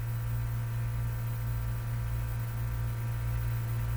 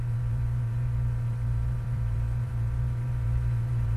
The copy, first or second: second